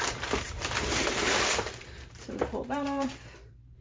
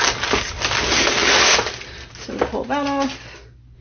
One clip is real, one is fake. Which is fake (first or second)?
first